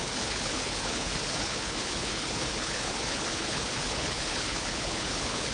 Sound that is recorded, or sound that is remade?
remade